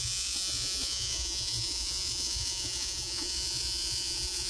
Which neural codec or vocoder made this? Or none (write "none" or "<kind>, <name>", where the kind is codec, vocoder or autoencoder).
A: vocoder, Vocos